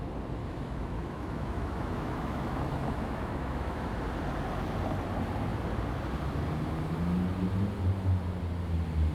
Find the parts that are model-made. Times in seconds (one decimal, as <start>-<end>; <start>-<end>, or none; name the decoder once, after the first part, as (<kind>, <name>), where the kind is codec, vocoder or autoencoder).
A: 0.4-3.9 (autoencoder, DAC-VAE)